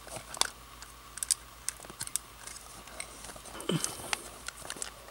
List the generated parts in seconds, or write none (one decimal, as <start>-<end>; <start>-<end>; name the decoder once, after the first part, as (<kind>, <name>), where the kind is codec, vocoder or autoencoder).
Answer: none